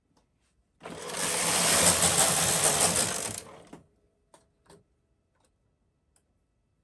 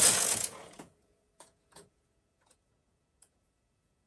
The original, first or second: first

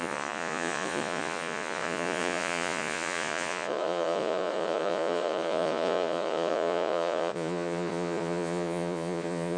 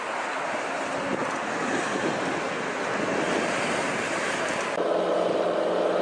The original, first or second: second